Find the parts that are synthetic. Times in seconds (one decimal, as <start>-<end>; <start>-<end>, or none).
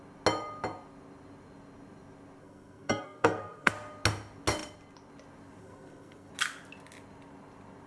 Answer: 2.4-3.7; 5.6-6.3